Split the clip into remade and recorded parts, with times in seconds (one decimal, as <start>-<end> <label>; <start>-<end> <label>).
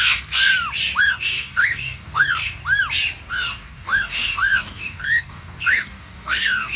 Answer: 0.0-0.5 remade; 0.5-1.0 recorded; 1.0-2.6 remade; 2.6-3.3 recorded; 3.3-6.8 remade